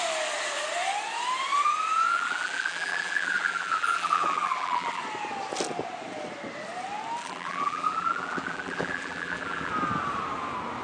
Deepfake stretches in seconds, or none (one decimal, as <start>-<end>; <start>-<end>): 2.1-5.0; 7.2-9.7